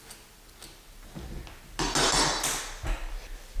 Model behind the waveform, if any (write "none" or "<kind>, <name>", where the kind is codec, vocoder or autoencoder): none